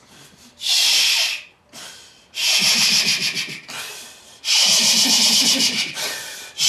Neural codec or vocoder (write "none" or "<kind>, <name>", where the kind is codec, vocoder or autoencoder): none